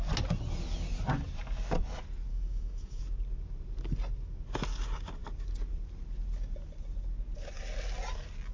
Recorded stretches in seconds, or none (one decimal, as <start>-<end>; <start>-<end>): 0.0-2.3; 3.0-8.5